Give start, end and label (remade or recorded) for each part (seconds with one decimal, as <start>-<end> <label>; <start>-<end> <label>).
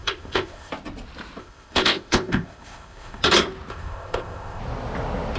0.0-0.7 remade; 0.7-1.4 recorded; 1.4-3.2 remade; 3.2-3.7 recorded; 3.7-4.6 remade; 4.6-5.4 recorded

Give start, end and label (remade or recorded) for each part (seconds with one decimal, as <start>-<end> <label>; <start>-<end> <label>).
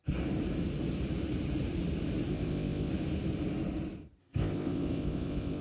0.0-2.3 recorded; 2.3-2.9 remade; 2.9-4.2 recorded; 4.2-5.6 remade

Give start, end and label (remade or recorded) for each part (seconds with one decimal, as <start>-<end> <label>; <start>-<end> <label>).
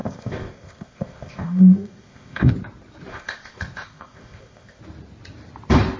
0.0-2.5 remade; 2.5-3.1 recorded; 3.1-4.8 remade; 4.8-6.0 recorded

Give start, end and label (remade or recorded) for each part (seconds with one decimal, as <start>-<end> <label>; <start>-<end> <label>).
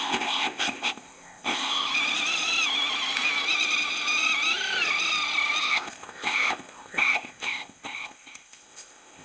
0.0-1.9 remade; 1.9-5.6 recorded; 5.6-9.2 remade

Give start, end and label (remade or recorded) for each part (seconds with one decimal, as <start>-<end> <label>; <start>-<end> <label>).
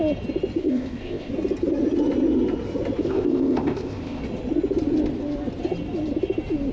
0.0-0.6 recorded; 0.6-1.3 remade; 1.3-3.0 recorded; 3.0-4.2 remade; 4.2-6.7 recorded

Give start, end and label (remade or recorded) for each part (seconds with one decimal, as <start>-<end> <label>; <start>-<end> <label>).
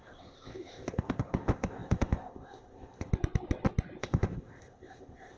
0.0-3.1 remade; 3.1-4.0 recorded; 4.0-5.4 remade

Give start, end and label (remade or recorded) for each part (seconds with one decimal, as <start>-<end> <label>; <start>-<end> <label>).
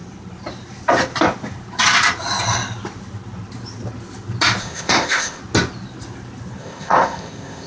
0.0-4.6 recorded; 4.6-5.4 remade; 5.4-6.6 recorded; 6.6-7.7 remade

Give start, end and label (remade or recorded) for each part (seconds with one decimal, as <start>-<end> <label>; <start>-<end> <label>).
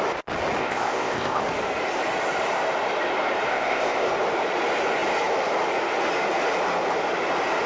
0.0-0.6 recorded; 0.6-1.4 remade; 1.4-3.5 recorded; 3.5-4.1 remade; 4.1-7.7 recorded